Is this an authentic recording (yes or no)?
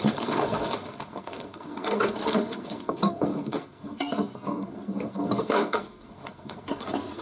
no